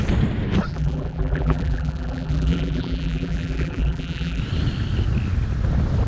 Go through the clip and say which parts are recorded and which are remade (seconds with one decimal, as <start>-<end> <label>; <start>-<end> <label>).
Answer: 0.0-0.7 recorded; 0.7-4.4 remade; 4.4-6.1 recorded

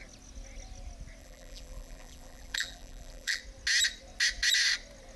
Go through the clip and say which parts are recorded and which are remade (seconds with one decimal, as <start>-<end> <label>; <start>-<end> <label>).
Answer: 0.0-1.2 recorded; 1.2-3.4 remade; 3.4-5.2 recorded

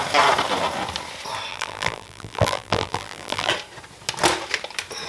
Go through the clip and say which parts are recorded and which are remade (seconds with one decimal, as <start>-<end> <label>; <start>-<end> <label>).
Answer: 0.0-1.5 recorded; 1.5-3.5 remade; 3.5-5.1 recorded

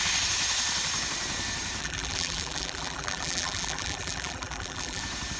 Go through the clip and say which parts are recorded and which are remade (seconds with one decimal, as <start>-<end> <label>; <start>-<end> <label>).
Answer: 0.0-1.8 recorded; 1.8-5.0 remade; 5.0-5.4 recorded

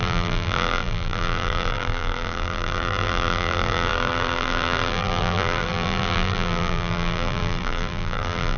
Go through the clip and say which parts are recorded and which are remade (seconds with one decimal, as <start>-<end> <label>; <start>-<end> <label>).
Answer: 0.0-8.6 remade

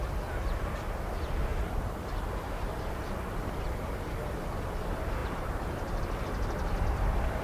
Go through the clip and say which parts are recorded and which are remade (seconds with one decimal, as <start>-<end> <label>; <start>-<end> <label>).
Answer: 0.0-1.5 recorded; 1.5-2.9 remade; 2.9-5.2 recorded; 5.2-6.0 remade; 6.0-7.4 recorded

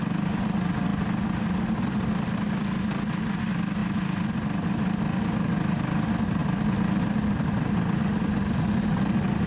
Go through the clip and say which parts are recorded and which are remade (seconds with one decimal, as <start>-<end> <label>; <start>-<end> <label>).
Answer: 0.0-9.5 recorded